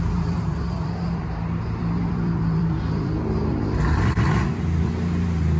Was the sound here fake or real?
fake